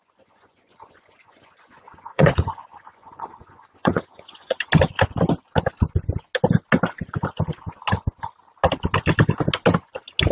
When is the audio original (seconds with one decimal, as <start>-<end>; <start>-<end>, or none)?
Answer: 4.6-10.3